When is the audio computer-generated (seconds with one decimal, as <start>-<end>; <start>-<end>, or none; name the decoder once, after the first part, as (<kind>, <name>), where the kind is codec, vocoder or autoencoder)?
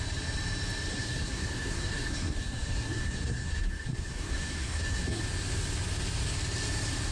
0.9-5.2 (codec, SNAC)